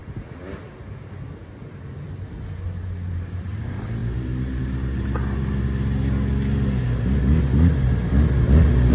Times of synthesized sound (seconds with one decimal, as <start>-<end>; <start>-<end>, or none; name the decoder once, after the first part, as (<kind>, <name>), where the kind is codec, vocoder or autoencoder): none